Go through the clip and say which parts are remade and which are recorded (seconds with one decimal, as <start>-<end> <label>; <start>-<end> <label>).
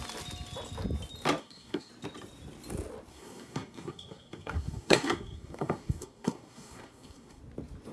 0.0-1.4 recorded; 1.4-1.9 remade; 1.9-3.1 recorded; 3.1-7.4 remade; 7.4-7.9 recorded